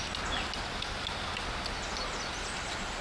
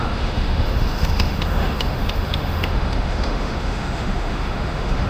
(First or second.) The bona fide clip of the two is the first